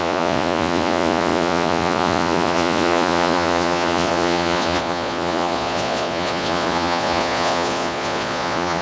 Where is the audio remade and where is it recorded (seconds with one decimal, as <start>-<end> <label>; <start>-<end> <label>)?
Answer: 0.0-8.8 remade